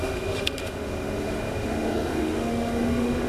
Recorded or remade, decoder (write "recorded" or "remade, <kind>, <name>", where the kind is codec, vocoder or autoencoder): remade, autoencoder, DAC-VAE